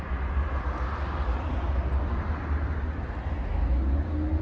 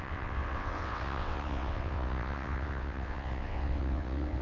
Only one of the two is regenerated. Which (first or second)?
second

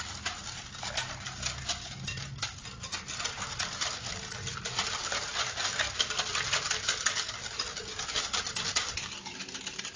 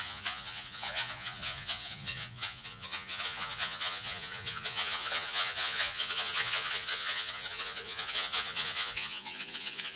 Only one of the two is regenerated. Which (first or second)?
second